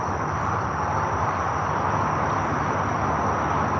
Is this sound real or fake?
real